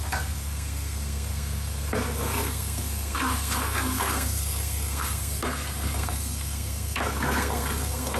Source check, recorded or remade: remade